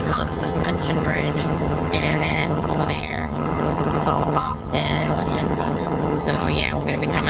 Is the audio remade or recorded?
remade